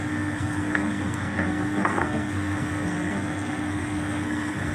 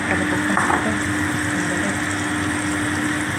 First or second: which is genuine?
second